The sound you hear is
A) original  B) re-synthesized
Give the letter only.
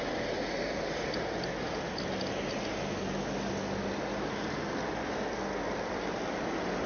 A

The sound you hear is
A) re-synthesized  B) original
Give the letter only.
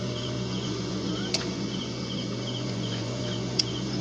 A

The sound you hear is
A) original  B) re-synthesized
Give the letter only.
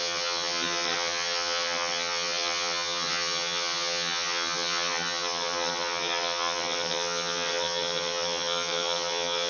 B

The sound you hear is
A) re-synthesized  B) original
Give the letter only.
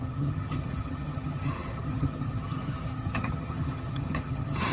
A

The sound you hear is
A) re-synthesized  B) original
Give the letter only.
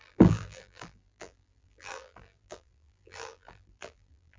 A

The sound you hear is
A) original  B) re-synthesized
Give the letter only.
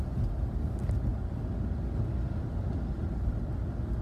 A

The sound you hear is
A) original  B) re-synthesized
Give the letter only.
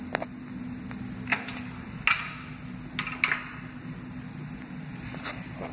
A